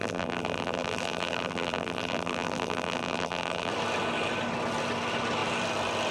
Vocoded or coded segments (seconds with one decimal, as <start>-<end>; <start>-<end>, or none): 0.0-3.7